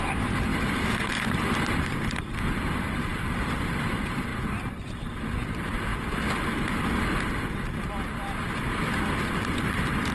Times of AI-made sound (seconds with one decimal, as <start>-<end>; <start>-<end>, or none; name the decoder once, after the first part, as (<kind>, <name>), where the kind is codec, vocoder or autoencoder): 0.0-0.5 (vocoder, BigVGAN v2); 1.2-4.3; 5.5-5.9; 9.6-10.1